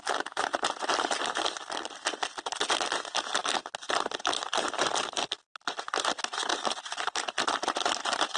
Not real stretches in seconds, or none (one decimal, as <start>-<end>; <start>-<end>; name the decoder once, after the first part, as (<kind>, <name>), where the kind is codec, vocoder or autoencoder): none